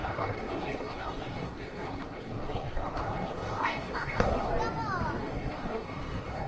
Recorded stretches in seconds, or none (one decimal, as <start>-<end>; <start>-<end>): 4.5-5.2

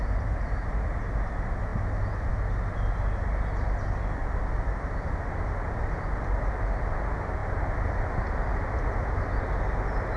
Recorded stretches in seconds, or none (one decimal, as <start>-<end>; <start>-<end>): 0.0-10.2